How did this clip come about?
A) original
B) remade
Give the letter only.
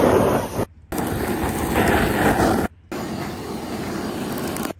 A